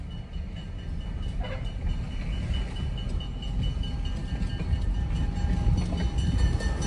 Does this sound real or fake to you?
real